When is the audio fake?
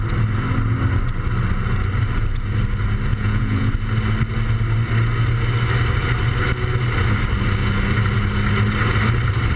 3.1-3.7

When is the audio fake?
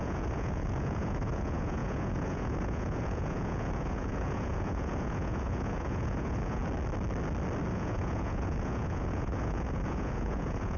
0.0-6.6; 7.7-10.8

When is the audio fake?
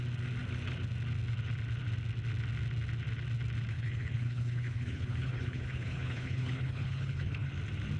3.7-7.5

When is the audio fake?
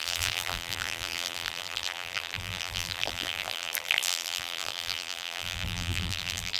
0.0-6.6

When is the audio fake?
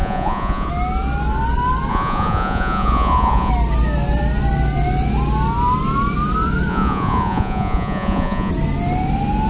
0.0-0.7; 1.9-3.5; 6.7-8.5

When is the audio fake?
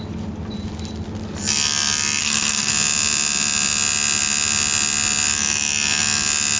2.2-2.7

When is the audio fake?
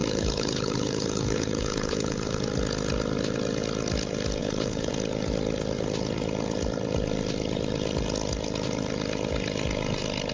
0.0-2.4; 4.4-4.9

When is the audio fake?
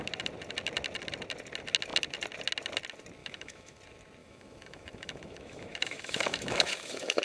3.2-3.8; 4.2-7.2